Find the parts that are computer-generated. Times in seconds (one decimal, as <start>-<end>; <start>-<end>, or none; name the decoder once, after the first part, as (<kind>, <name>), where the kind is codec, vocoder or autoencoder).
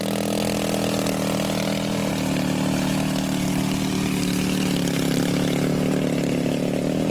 none